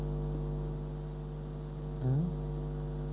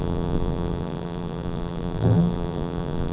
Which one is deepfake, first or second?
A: second